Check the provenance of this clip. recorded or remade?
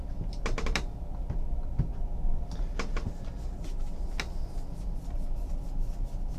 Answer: recorded